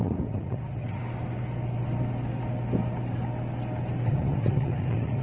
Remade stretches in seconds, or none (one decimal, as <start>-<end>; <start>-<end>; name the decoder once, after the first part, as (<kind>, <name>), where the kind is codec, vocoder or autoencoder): 0.0-1.0 (vocoder, Vocos); 4.1-5.2